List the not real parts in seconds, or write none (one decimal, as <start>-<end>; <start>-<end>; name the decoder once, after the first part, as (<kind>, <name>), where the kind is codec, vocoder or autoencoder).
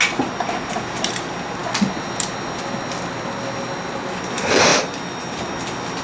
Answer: 4.7-5.4 (vocoder, BigVGAN v2)